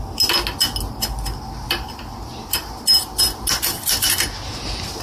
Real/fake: real